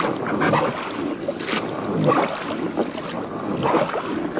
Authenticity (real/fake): real